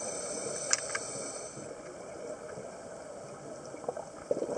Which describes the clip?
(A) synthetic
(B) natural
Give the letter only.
B